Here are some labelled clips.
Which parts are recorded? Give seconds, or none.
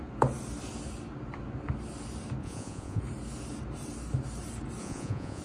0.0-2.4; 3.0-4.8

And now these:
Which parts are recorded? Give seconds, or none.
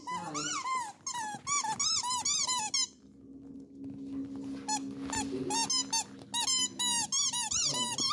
0.0-8.1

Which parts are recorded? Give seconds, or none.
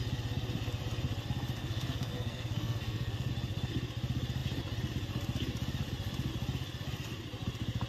0.0-1.6; 3.3-7.9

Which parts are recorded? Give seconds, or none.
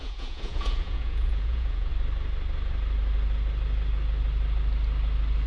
1.9-5.5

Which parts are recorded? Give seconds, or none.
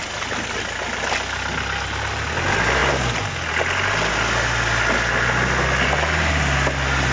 0.0-7.1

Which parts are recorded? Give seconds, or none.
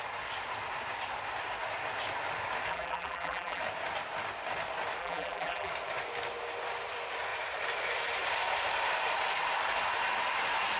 0.0-2.7; 3.6-5.0; 5.7-10.8